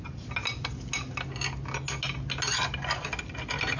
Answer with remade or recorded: recorded